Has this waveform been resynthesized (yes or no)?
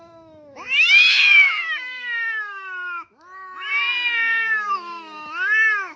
yes